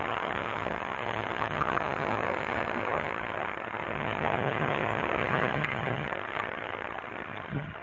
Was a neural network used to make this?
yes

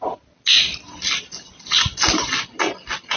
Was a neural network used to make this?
no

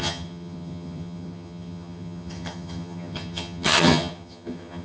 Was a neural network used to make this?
yes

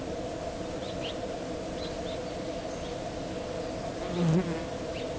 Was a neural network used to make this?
no